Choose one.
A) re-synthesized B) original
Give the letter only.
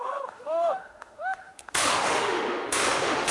A